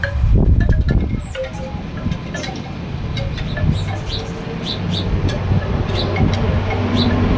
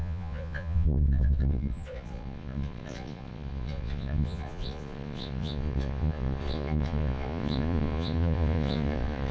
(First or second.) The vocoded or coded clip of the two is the second